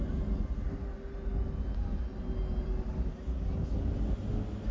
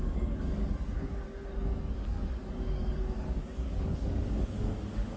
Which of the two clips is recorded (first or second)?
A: first